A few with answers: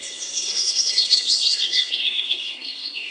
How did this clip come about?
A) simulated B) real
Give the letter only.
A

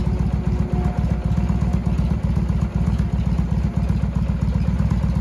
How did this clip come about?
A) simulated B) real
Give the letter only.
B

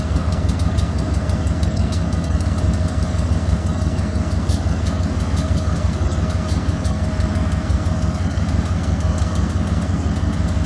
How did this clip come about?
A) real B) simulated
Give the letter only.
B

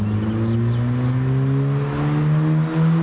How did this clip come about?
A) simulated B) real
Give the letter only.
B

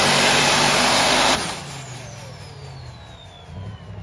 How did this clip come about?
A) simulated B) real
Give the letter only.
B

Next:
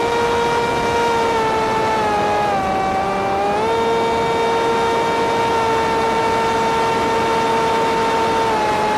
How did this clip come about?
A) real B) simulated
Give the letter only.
A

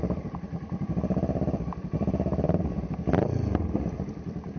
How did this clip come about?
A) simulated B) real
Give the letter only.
A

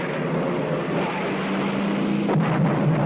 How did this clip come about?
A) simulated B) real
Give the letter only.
B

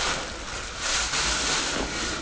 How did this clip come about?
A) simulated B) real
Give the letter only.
B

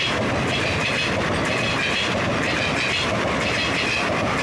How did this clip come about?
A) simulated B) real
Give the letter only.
B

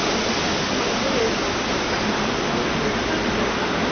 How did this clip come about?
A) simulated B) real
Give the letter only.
B